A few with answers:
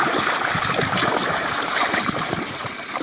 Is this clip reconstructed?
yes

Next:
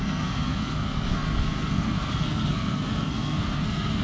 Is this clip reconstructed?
yes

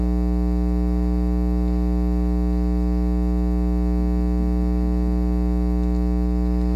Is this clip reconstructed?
no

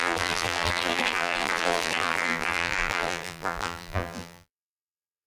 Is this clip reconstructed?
yes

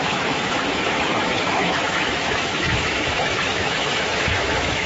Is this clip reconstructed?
yes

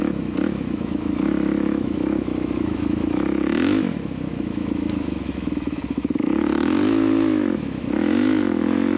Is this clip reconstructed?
yes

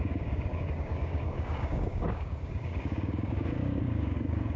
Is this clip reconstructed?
yes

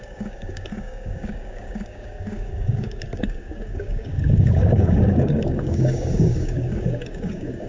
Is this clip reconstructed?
yes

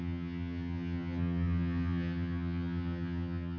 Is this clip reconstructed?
yes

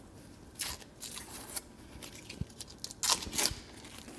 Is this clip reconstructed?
no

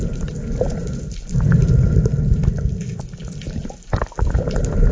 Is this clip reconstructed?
no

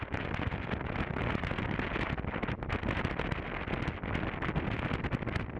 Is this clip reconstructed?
no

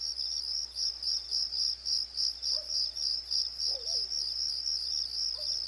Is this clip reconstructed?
no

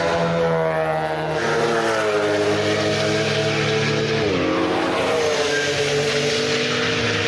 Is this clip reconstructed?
no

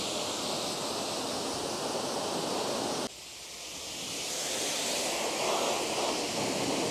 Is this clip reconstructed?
no